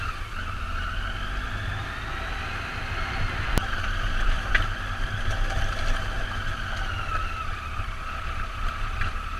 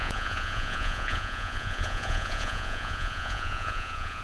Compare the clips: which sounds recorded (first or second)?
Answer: first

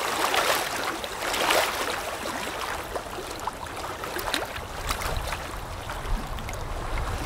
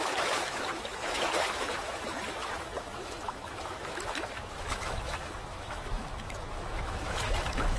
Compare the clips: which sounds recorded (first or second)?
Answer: first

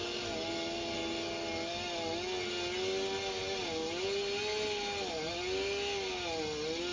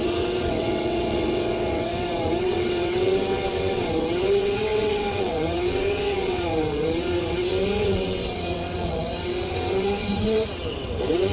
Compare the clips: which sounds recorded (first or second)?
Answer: first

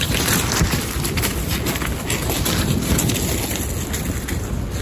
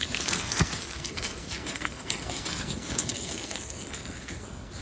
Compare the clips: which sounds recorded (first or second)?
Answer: first